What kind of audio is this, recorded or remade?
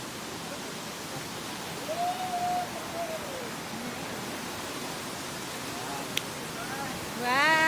recorded